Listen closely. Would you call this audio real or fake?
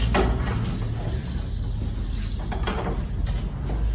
real